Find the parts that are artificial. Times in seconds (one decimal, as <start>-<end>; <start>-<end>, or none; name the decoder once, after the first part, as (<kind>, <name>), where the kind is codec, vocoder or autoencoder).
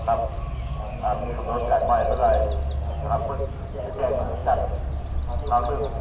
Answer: none